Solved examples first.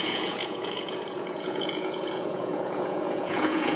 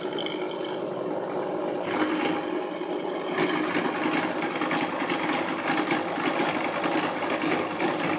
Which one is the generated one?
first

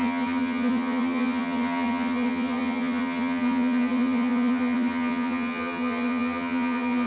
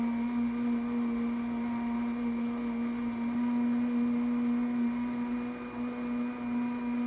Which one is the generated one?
first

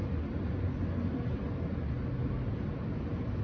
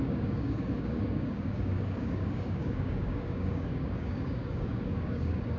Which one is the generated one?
second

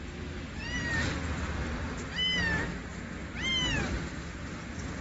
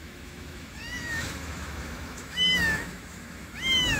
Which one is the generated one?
second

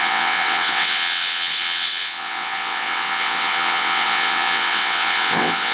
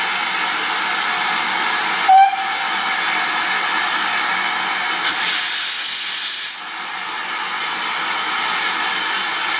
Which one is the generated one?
first